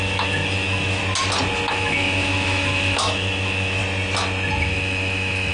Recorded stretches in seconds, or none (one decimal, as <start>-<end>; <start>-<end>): 1.0-1.7; 3.8-4.6